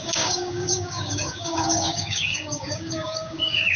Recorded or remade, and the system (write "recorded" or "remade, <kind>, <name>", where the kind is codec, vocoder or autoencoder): remade, codec, DAC